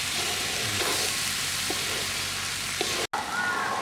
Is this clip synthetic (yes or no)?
no